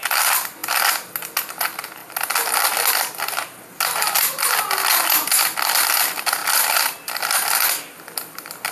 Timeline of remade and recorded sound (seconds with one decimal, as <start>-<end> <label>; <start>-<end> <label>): 0.0-8.7 recorded